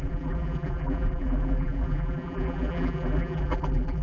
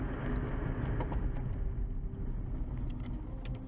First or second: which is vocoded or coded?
first